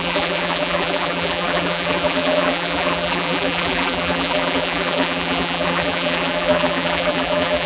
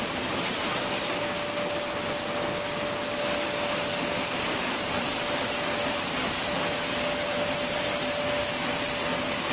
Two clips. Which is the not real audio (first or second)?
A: first